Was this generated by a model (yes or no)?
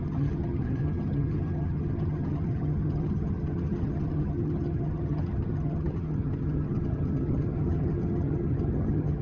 yes